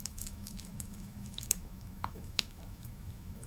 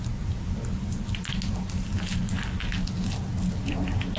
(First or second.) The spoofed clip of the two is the first